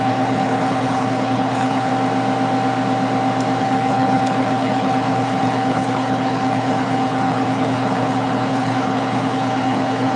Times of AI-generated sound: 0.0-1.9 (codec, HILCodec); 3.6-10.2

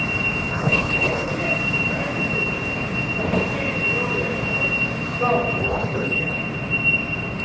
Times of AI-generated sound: 0.5-1.3 (codec, HILCodec); 5.6-6.4

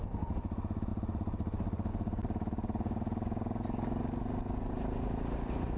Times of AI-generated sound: none

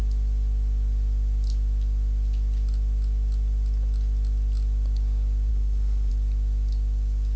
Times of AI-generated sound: 5.5-6.1 (codec, HILCodec)

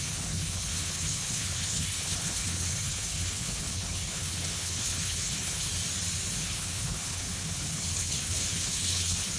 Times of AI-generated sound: 0.0-5.7 (codec, HILCodec); 6.3-9.4

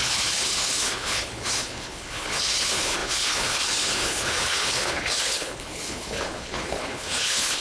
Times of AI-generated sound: 0.0-7.6 (codec, HILCodec)

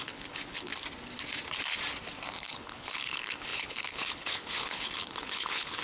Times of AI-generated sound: 0.0-0.7 (codec, HILCodec); 2.3-5.8

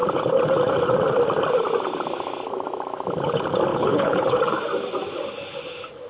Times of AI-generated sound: 3.7-4.4 (codec, HILCodec)